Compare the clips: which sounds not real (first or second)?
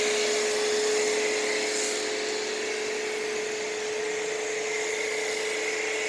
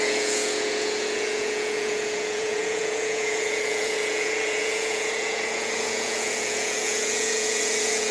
second